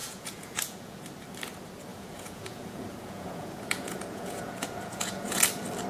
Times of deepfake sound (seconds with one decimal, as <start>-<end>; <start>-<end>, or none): 0.0-1.0; 1.9-5.4

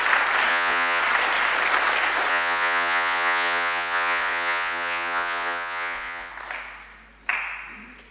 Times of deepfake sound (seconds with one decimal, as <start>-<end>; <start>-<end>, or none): 0.5-1.0; 2.3-6.3

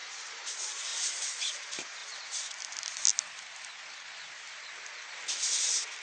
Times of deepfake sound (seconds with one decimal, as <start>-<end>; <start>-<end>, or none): none

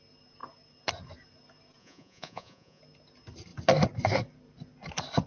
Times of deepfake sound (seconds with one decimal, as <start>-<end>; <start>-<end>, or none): 1.8-2.8

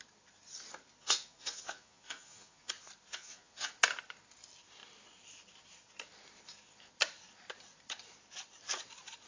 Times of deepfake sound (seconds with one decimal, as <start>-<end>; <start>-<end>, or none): 1.0-2.7; 3.1-3.7

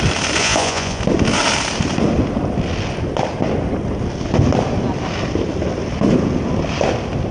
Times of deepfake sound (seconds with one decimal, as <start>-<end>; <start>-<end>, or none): 0.4-1.0